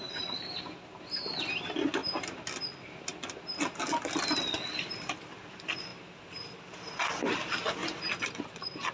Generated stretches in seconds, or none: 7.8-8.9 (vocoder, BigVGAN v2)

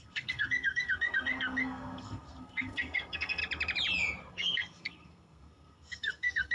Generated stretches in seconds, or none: 0.0-3.4 (codec, SNAC); 4.3-6.5

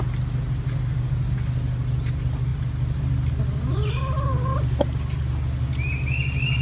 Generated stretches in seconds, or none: none

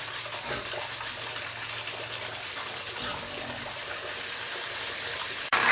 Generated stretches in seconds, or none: none